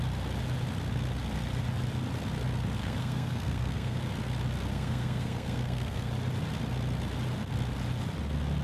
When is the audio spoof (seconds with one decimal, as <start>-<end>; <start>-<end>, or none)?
2.8-4.0; 4.7-6.1